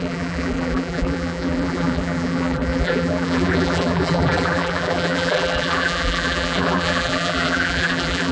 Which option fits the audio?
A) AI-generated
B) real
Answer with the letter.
A